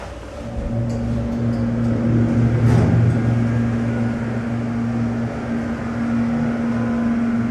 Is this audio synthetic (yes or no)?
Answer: no